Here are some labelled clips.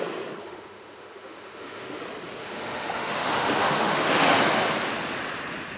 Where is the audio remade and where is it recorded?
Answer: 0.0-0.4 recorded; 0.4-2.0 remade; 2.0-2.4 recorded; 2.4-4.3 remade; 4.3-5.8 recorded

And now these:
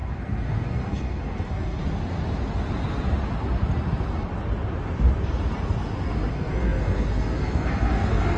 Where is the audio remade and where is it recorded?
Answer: 0.0-1.8 remade; 1.8-6.3 recorded; 6.3-8.4 remade

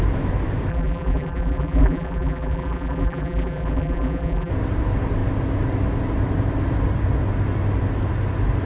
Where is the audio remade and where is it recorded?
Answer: 0.0-0.7 recorded; 0.7-4.5 remade; 4.5-8.7 recorded

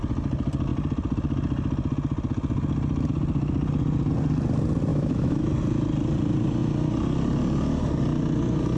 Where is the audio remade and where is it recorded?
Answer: 0.0-4.9 recorded; 4.9-5.5 remade; 5.5-8.8 recorded

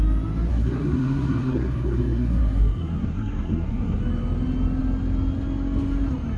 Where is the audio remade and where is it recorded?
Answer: 0.0-0.5 recorded; 0.5-4.0 remade; 4.0-6.4 recorded

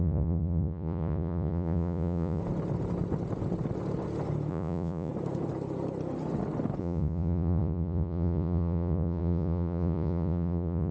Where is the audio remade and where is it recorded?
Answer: 0.0-2.4 remade; 2.4-4.5 recorded; 4.5-5.1 remade; 5.1-6.8 recorded; 6.8-10.9 remade